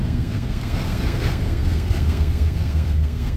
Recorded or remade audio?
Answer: remade